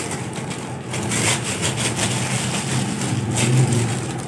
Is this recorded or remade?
recorded